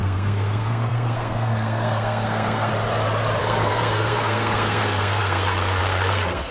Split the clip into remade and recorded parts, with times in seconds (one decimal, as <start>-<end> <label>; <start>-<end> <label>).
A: 0.0-2.7 remade; 2.7-3.4 recorded; 3.4-6.5 remade

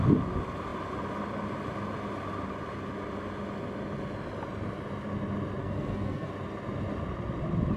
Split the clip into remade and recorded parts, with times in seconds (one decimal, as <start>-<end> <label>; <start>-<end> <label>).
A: 0.0-5.6 recorded; 5.6-6.3 remade; 6.3-7.8 recorded

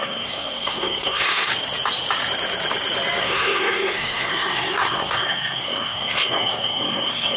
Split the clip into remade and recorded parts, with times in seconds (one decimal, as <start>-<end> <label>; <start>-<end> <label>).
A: 0.0-1.5 remade; 1.5-3.2 recorded; 3.2-7.4 remade